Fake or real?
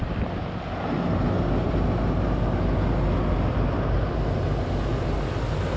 real